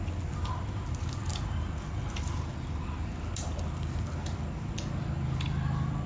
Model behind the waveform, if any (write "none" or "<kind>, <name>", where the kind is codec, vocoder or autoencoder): none